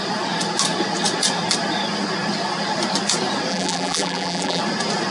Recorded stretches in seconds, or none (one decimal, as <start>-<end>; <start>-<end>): 0.0-3.5; 4.6-5.1